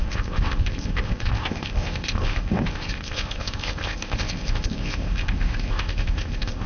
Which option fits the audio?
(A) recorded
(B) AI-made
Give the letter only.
B